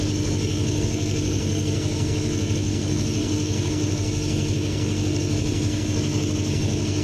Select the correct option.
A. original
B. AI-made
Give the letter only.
B